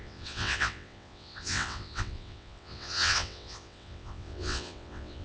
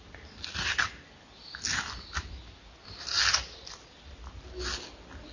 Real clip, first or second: second